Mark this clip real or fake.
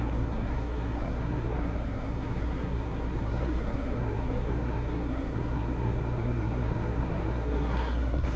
fake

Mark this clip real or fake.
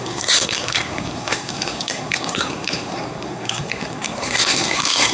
fake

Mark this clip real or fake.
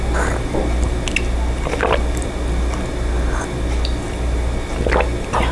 real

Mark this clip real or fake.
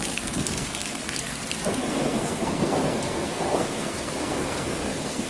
fake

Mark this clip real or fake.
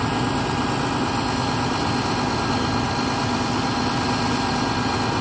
real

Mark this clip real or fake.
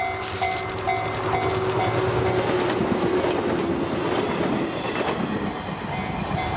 real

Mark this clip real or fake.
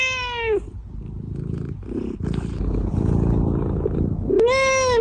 real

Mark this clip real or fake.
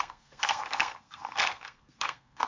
fake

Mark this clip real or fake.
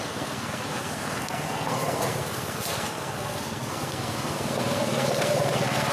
fake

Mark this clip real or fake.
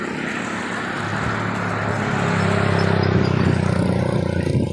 real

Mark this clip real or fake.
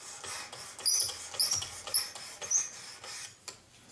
real